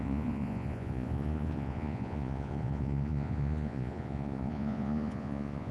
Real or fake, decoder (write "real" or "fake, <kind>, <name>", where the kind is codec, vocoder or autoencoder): fake, vocoder, Vocos